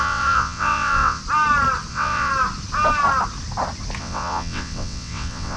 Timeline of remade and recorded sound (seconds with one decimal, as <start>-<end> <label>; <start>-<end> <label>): 0.0-1.2 remade; 1.2-1.9 recorded; 1.9-2.3 remade; 2.3-4.0 recorded; 4.0-5.6 remade